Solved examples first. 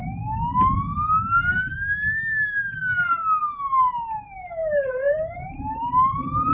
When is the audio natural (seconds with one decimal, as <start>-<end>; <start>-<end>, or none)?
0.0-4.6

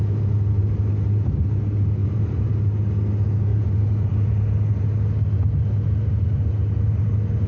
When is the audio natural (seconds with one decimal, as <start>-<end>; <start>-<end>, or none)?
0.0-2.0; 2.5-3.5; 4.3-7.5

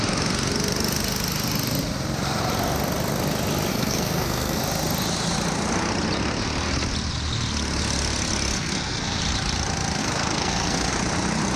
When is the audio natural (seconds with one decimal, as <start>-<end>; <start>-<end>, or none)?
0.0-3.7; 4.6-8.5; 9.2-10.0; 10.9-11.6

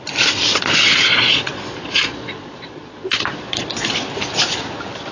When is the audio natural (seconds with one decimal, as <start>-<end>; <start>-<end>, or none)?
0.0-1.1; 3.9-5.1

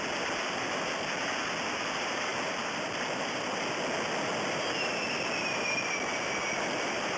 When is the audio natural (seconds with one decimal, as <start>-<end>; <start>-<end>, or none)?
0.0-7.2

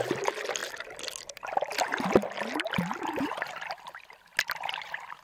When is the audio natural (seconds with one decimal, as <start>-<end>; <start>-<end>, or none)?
0.0-5.2